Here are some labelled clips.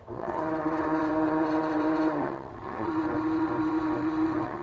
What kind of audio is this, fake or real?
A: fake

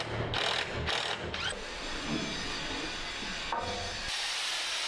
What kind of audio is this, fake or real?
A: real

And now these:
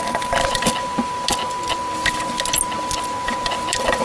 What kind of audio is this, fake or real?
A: real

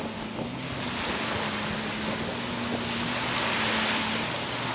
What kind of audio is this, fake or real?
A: real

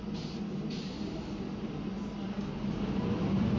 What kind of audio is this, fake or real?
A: real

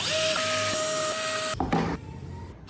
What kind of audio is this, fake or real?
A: real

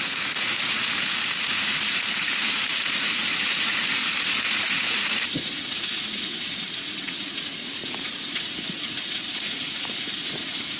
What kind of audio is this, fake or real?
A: fake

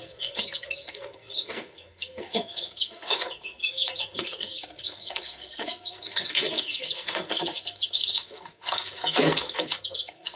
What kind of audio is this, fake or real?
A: fake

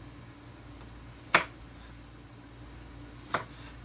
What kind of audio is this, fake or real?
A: real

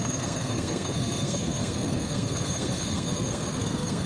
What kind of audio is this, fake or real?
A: fake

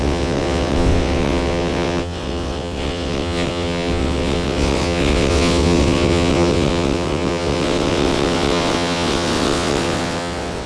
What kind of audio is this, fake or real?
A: fake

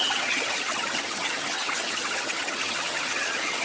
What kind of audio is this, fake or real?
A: fake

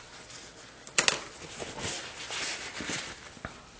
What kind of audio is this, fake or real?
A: real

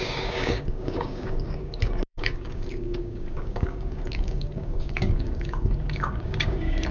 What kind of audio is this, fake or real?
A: fake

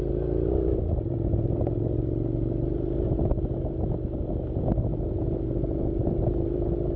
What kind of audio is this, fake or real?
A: real